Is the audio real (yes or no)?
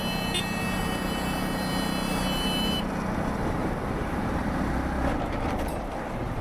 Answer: yes